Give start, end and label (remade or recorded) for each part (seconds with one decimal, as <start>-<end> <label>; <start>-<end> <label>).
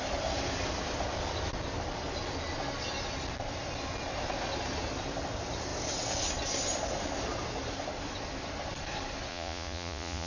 0.0-9.3 recorded; 9.3-10.3 remade